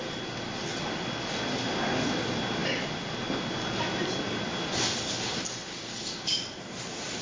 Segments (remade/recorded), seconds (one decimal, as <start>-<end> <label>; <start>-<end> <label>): 0.0-7.2 recorded